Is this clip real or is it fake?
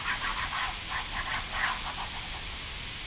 real